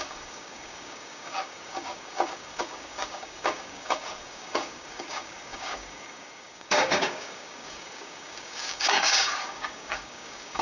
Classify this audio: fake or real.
fake